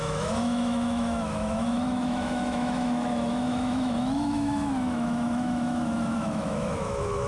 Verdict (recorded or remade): remade